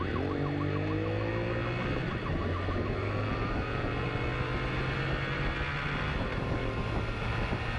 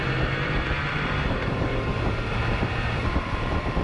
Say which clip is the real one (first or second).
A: first